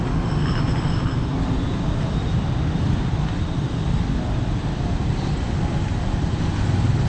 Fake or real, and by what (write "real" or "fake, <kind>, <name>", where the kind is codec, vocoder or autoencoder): real